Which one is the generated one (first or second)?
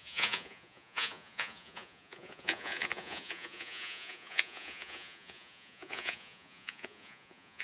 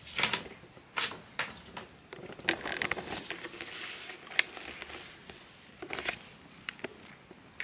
first